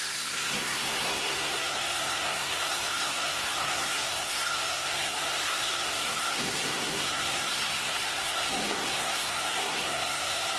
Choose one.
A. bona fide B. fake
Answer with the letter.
B